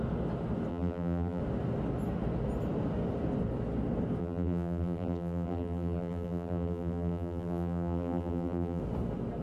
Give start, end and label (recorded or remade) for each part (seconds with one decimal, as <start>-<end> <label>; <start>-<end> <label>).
0.0-0.7 recorded; 0.7-1.4 remade; 1.4-4.2 recorded; 4.2-8.8 remade; 8.8-9.4 recorded